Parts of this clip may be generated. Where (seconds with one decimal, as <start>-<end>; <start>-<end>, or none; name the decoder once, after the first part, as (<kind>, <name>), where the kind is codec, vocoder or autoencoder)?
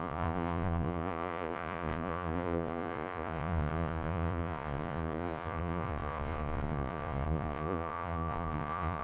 0.0-9.0 (vocoder, Vocos)